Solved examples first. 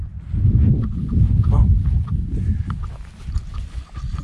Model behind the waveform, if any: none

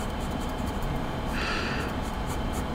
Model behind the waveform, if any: vocoder, BigVGAN v2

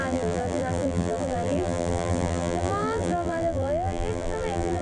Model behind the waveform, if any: vocoder, BigVGAN v2